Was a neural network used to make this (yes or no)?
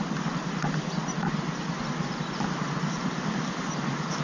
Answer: no